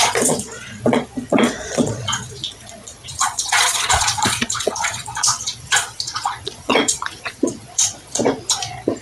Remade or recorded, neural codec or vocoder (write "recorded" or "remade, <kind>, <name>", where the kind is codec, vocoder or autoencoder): remade, vocoder, Vocos